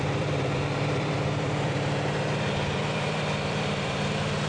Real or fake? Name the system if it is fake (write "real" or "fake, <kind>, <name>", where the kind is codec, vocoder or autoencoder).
fake, vocoder, BigVGAN v2